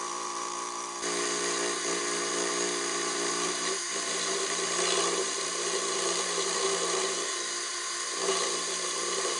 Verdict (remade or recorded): remade